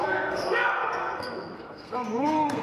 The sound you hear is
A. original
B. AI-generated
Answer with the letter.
B